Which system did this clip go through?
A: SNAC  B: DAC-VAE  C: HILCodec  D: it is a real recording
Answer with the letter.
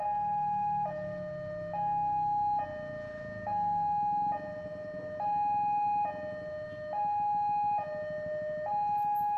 D